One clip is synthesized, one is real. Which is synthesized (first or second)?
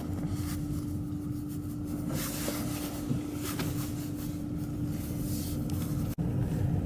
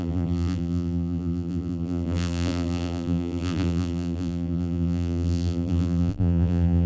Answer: second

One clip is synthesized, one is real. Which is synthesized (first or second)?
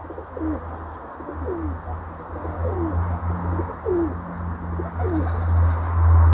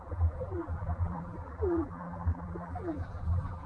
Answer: second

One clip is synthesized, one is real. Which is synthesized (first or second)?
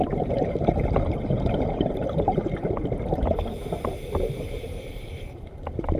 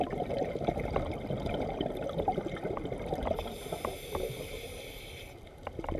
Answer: first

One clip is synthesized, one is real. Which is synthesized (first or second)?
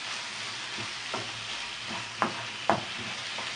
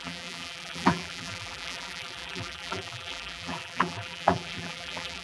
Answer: second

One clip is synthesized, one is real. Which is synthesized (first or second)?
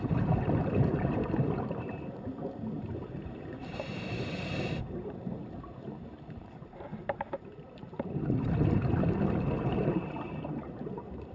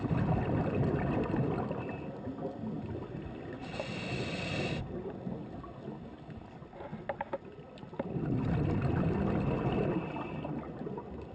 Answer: first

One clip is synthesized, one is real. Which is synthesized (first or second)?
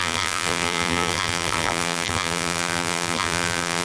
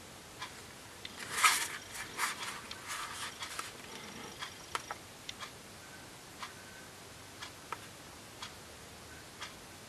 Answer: first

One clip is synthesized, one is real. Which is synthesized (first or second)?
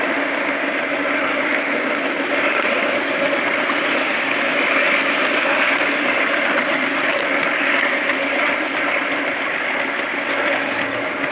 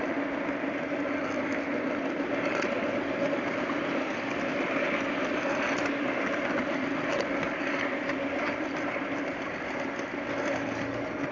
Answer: first